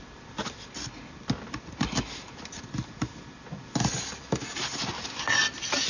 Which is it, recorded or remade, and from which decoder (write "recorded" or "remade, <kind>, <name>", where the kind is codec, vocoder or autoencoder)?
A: recorded